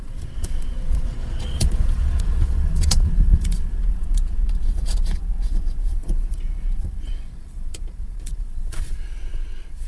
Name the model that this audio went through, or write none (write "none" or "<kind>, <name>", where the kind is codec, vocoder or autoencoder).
vocoder, Vocos